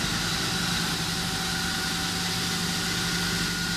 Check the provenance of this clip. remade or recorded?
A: recorded